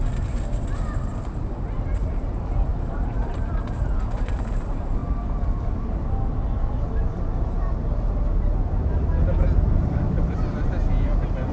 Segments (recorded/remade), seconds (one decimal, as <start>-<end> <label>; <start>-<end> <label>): 0.0-1.4 recorded; 1.4-5.0 remade; 5.0-7.5 recorded; 7.5-11.5 remade